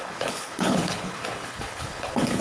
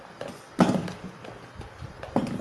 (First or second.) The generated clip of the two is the first